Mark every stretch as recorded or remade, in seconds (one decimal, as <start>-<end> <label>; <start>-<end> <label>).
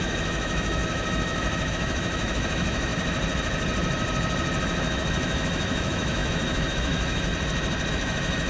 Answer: 0.0-2.9 remade; 2.9-4.6 recorded; 4.6-7.3 remade; 7.3-7.9 recorded; 7.9-8.5 remade